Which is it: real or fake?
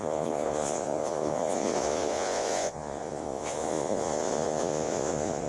fake